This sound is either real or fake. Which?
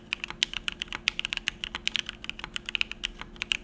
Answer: real